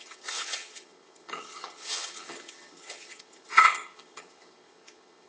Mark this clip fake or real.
fake